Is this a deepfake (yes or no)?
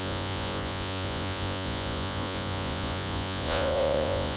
yes